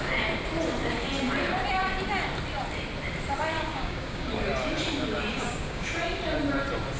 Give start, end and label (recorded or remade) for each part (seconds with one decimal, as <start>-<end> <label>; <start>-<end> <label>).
0.0-3.7 recorded; 3.7-4.3 remade; 4.3-5.3 recorded; 5.3-5.9 remade; 5.9-7.0 recorded